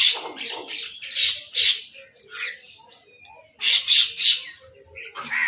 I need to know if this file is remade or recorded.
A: recorded